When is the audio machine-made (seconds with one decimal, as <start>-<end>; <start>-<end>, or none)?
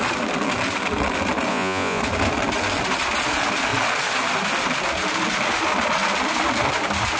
1.5-2.0